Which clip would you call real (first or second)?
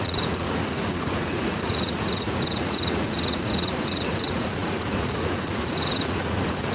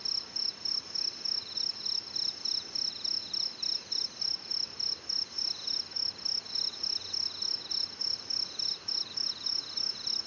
second